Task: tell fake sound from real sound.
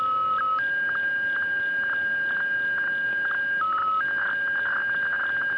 real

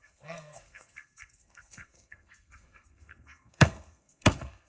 fake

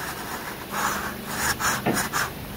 real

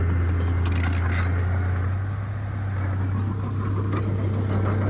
real